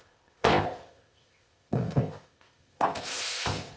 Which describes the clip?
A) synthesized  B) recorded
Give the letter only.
A